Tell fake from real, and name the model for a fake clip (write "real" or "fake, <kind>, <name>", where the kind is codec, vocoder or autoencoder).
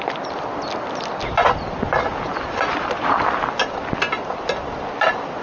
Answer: real